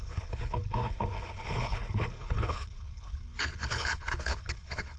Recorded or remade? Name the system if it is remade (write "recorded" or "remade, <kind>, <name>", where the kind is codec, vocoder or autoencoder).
remade, codec, HILCodec